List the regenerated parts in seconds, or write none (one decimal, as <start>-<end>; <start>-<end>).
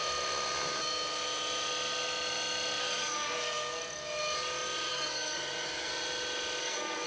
2.8-3.8; 4.9-5.9; 6.6-7.1